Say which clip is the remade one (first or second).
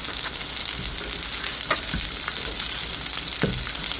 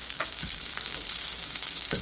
second